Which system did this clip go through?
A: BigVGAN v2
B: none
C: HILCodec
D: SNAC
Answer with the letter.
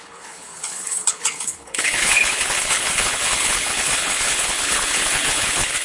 C